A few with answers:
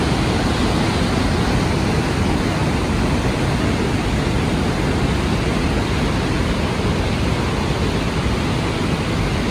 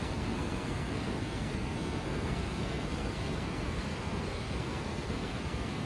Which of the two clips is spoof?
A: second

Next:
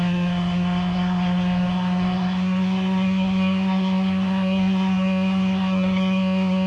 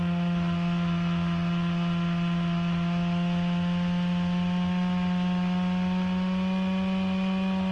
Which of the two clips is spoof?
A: first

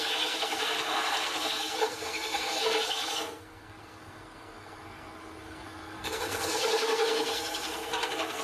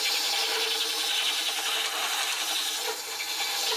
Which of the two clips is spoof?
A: first